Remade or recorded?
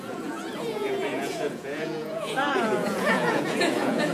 remade